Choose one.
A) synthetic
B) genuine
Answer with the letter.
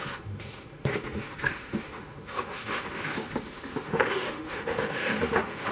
A